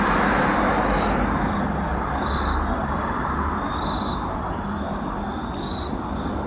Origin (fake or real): real